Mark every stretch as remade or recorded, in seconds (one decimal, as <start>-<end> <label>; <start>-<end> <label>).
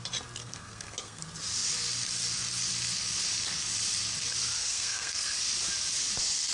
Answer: 0.0-0.4 recorded; 0.4-1.2 remade; 1.2-4.6 recorded; 4.6-5.4 remade; 5.4-6.5 recorded